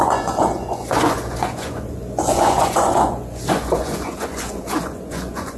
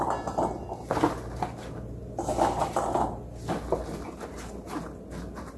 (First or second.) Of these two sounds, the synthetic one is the first